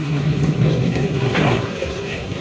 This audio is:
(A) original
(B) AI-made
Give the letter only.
B